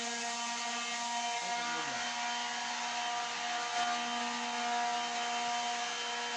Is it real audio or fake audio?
real